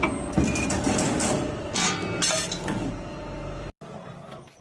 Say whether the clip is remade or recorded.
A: recorded